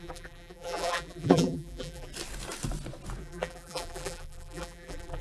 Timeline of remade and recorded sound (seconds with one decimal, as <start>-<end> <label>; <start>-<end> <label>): 0.0-2.1 remade; 2.1-3.2 recorded; 3.2-5.2 remade